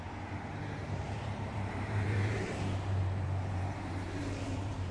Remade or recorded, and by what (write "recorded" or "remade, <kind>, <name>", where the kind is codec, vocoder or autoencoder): remade, vocoder, BigVGAN v2